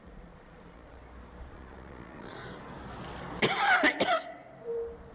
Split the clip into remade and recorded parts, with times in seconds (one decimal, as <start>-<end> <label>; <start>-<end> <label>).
0.0-1.0 remade; 1.0-1.5 recorded; 1.5-2.4 remade; 2.4-5.1 recorded